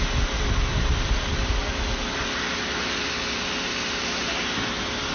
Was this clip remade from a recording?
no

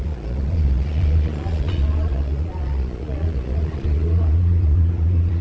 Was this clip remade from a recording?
yes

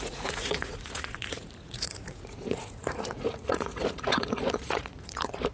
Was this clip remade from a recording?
yes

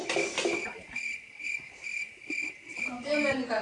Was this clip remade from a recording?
no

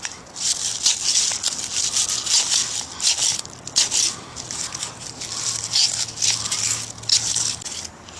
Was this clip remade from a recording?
no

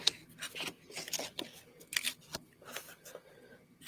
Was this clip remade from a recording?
no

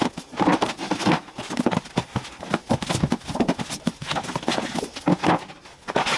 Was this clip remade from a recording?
no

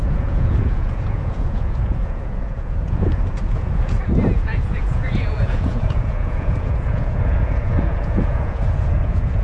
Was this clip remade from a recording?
yes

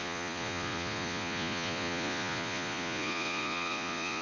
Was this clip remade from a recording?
yes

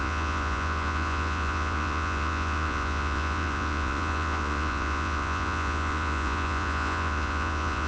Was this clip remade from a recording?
yes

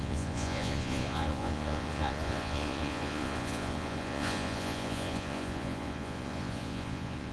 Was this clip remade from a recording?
yes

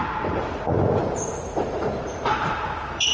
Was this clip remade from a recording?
yes